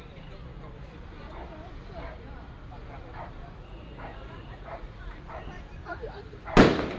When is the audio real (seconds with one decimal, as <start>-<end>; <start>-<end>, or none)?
0.0-3.6; 5.2-5.8; 6.4-7.0